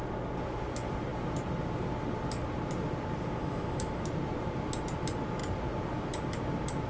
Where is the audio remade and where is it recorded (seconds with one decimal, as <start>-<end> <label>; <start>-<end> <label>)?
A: 0.0-3.4 recorded; 3.4-4.0 remade; 4.0-6.9 recorded